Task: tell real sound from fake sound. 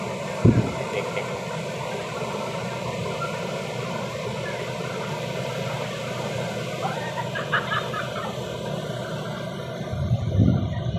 real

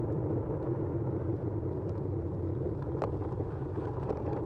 fake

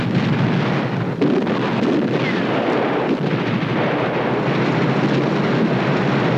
real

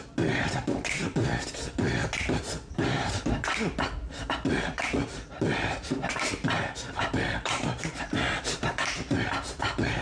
fake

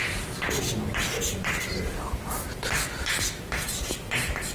real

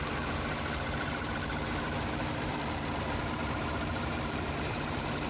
fake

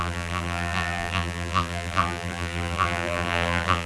fake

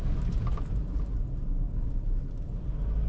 real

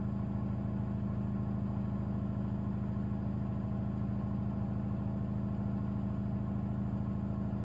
real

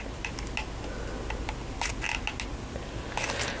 real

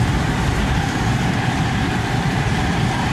fake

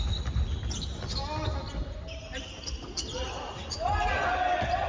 real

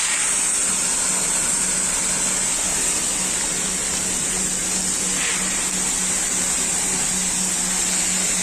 real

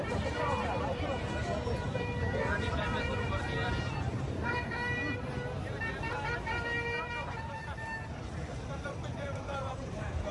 fake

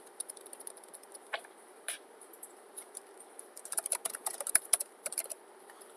fake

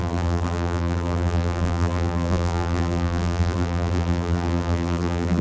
fake